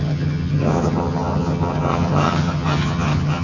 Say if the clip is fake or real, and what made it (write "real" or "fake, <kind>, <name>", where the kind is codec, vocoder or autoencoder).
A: fake, vocoder, HiFi-GAN